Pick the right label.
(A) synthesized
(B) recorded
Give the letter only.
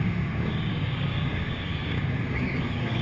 A